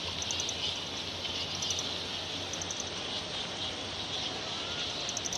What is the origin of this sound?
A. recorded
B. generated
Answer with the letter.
A